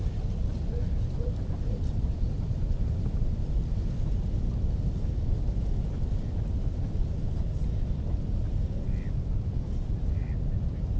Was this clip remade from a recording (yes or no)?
no